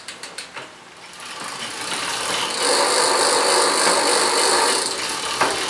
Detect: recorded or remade recorded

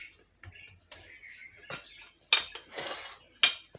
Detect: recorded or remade recorded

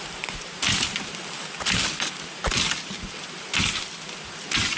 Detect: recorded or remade recorded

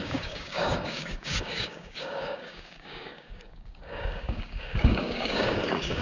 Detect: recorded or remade remade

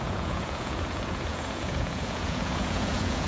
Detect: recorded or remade remade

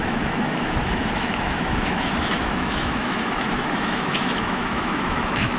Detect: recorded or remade remade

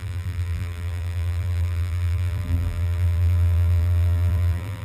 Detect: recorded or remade remade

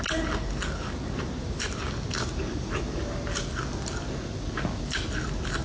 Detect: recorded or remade recorded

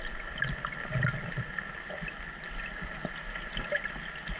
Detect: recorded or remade recorded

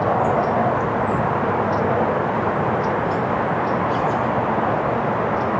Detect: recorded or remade recorded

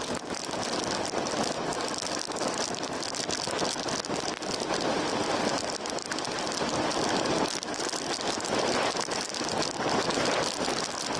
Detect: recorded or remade recorded